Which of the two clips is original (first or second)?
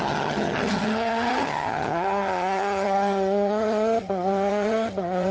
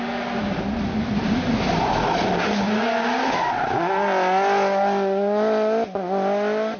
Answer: second